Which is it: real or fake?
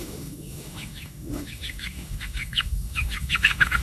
fake